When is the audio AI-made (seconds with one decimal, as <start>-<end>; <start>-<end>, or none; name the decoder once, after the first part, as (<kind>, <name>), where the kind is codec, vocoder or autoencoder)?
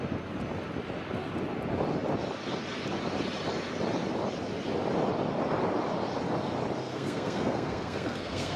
6.8-8.6 (codec, SNAC)